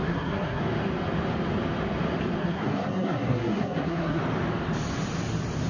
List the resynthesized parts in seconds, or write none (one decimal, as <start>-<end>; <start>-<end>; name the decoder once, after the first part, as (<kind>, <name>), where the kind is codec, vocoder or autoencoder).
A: 0.0-0.6 (codec, SNAC); 2.4-4.2